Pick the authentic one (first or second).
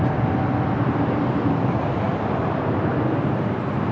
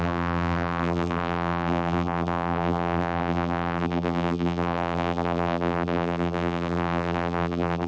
first